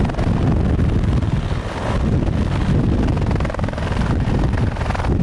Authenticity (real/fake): real